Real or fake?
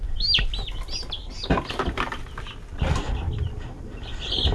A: real